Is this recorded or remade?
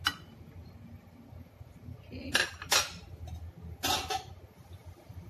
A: recorded